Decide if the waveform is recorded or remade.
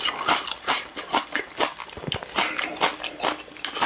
recorded